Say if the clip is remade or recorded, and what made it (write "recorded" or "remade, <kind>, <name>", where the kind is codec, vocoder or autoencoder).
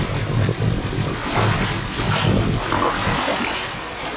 recorded